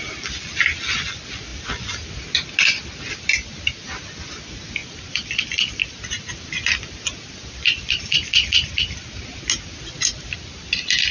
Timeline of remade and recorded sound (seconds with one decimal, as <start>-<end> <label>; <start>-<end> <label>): 0.0-11.1 recorded